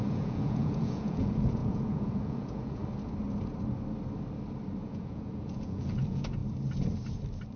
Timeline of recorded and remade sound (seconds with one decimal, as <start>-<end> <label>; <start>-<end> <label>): 0.0-2.8 remade; 2.8-4.8 recorded; 4.8-6.4 remade; 6.4-7.6 recorded